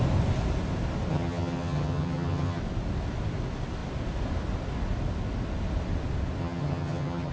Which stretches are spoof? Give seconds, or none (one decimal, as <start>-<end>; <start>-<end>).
1.1-2.6; 6.4-7.3